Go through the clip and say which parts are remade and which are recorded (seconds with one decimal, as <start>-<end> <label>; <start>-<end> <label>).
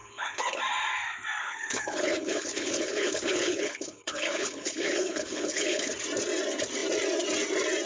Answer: 0.0-0.6 remade; 0.6-1.4 recorded; 1.4-5.9 remade; 5.9-7.9 recorded